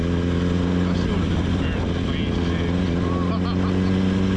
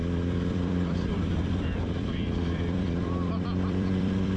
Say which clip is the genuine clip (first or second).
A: first